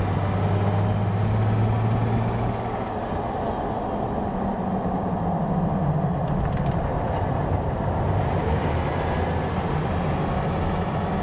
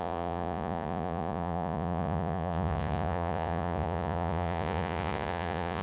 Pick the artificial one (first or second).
second